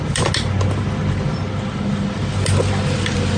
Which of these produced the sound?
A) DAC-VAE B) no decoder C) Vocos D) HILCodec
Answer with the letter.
B